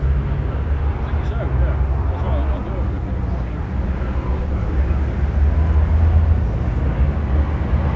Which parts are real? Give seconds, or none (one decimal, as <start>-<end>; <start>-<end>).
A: 0.0-8.0